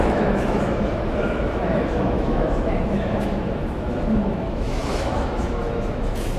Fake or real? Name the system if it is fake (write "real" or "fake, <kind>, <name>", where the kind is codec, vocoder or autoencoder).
fake, autoencoder, DAC-VAE